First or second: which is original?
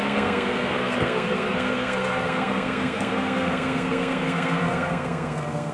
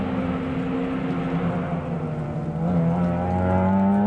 second